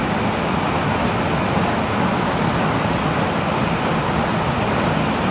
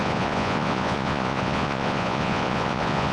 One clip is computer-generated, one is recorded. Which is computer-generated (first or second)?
second